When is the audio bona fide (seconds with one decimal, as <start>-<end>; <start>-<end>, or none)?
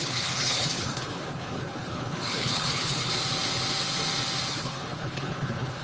3.1-4.5